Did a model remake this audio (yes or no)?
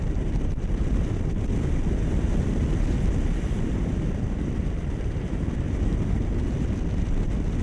no